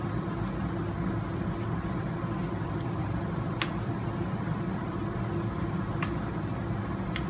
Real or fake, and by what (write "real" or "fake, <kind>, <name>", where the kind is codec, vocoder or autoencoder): real